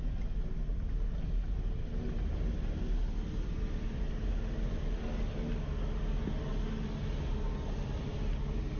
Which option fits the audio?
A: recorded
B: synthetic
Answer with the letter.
A